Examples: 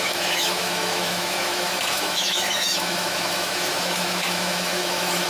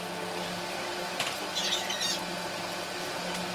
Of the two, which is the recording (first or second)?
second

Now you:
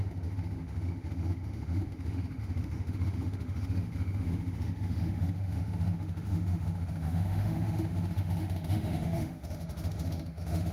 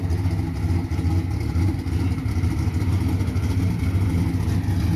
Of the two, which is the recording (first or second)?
second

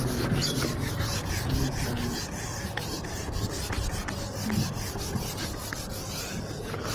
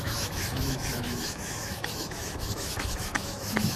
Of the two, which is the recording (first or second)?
first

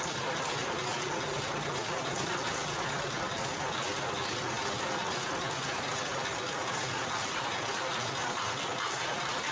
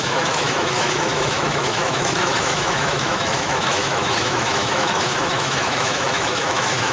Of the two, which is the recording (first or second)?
first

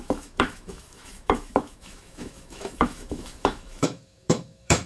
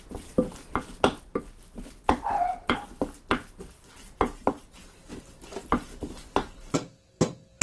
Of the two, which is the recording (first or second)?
second